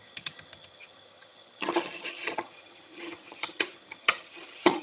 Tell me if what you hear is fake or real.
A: fake